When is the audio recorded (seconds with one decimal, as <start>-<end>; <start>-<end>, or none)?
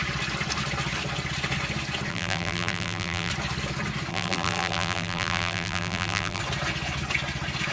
0.0-2.1; 3.3-4.1; 6.4-7.7